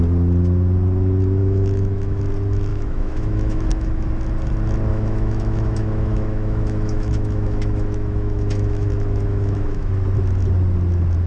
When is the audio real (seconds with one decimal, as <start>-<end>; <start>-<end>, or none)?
0.0-1.4; 2.2-2.7; 4.1-4.9; 9.9-11.3